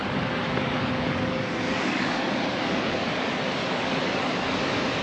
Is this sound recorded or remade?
remade